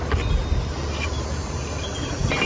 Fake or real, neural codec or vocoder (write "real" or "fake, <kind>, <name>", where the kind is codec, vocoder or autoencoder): real